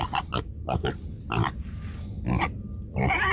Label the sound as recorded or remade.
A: recorded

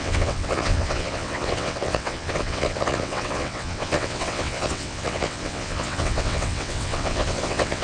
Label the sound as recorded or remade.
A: remade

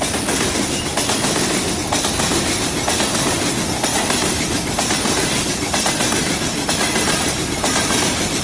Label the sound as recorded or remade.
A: recorded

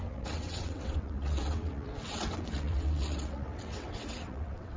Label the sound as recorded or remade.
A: remade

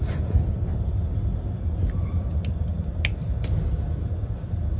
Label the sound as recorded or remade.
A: recorded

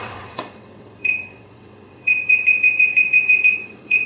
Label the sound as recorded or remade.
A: remade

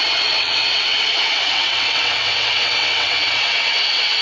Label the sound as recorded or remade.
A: remade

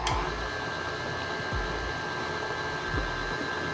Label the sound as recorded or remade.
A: recorded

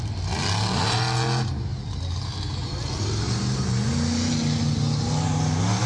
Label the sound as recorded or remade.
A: recorded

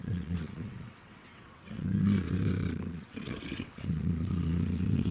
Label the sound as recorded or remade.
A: remade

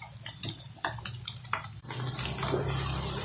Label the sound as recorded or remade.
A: recorded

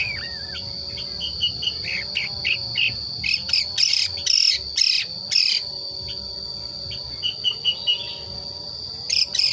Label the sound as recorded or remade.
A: recorded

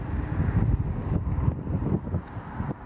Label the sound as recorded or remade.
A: recorded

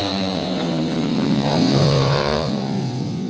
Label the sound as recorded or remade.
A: remade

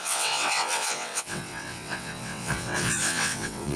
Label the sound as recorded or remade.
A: remade